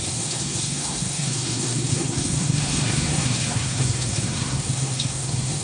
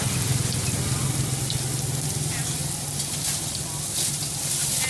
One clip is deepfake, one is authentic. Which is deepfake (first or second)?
first